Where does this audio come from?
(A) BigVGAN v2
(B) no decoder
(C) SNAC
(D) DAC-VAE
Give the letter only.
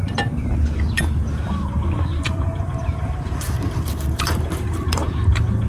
A